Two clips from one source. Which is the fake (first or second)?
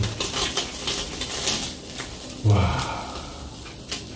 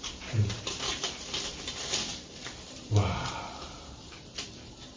second